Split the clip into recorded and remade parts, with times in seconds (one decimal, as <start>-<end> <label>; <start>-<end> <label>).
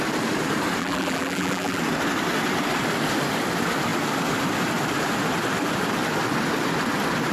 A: 0.0-0.8 recorded; 0.8-1.8 remade; 1.8-7.3 recorded